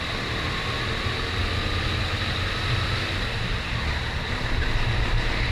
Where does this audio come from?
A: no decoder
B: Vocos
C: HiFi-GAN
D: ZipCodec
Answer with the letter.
A